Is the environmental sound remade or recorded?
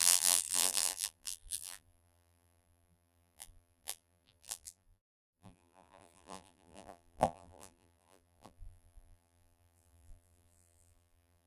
remade